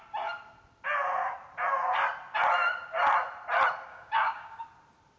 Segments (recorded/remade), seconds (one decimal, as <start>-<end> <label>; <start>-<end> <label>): 0.0-3.9 recorded; 3.9-4.6 remade; 4.6-5.2 recorded

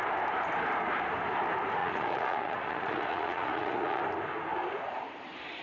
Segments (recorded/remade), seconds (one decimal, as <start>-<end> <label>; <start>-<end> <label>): 0.0-1.8 recorded; 1.8-4.0 remade; 4.0-5.6 recorded

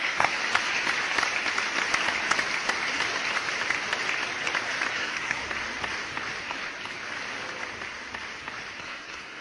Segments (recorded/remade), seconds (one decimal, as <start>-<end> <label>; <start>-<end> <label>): 0.0-0.4 remade; 0.4-4.9 recorded; 4.9-5.4 remade; 5.4-8.8 recorded; 8.8-9.4 remade

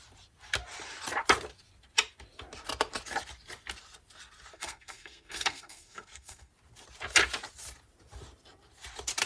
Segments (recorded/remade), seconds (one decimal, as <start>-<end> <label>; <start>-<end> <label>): 0.0-4.5 recorded; 4.5-6.5 remade; 6.5-9.3 recorded

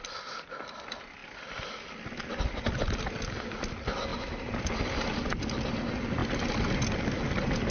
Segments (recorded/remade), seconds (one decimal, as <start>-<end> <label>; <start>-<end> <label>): 0.0-4.1 recorded; 4.1-4.7 remade; 4.7-7.7 recorded

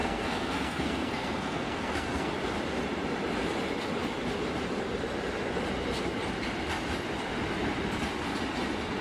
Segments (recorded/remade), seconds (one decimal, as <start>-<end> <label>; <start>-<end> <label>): 0.0-2.3 remade; 2.3-9.0 recorded